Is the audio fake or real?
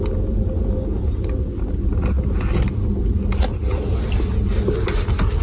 real